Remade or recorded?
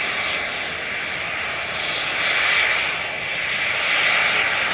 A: recorded